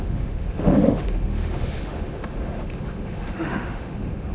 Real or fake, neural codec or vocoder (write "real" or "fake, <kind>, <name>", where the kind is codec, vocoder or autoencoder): fake, autoencoder, DAC-VAE